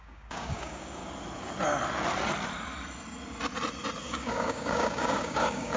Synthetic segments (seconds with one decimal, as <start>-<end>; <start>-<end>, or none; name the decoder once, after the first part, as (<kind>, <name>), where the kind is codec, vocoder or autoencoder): 0.0-1.0 (codec, DAC); 4.0-5.8